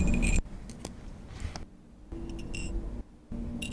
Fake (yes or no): no